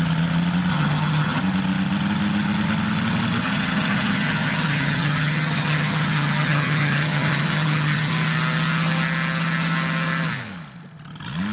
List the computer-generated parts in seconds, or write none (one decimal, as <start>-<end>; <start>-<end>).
0.7-1.4; 3.4-8.1